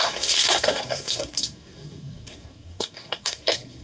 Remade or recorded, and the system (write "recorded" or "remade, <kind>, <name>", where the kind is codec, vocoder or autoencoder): remade, codec, SNAC